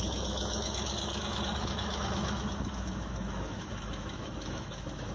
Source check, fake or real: fake